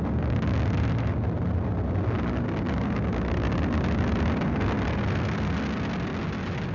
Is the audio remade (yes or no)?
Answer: no